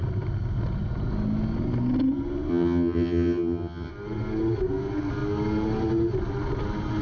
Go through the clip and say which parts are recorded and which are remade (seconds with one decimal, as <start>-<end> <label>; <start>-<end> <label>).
0.0-2.5 recorded; 2.5-3.9 remade; 3.9-7.0 recorded